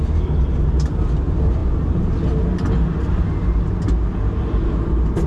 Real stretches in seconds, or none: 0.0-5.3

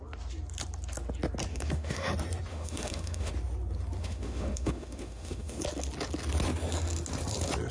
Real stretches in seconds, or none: 0.0-1.5; 2.1-2.5; 3.3-4.0; 5.6-7.7

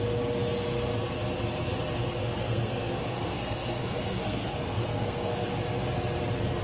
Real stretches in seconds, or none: 0.0-2.2; 5.5-6.6

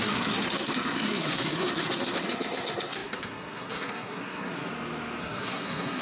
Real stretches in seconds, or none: 4.7-5.2

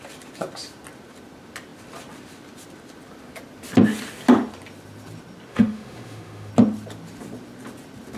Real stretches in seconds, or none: 0.0-5.5; 6.5-8.2

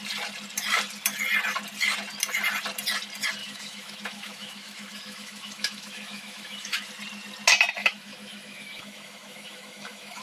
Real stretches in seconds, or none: 0.0-3.4; 6.9-7.8

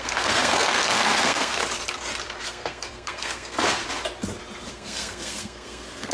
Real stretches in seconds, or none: 1.6-2.4; 3.8-4.7